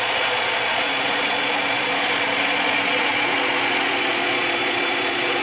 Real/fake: fake